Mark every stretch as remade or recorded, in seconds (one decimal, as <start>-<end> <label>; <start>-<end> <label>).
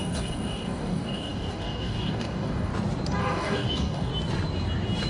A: 0.0-2.7 remade; 2.7-3.2 recorded; 3.2-4.1 remade; 4.1-5.1 recorded